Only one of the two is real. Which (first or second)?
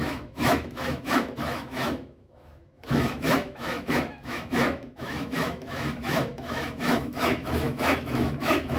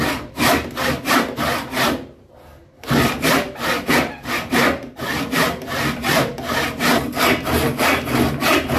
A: second